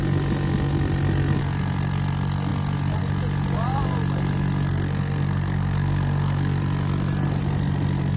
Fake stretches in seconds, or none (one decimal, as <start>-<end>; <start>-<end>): 4.7-6.6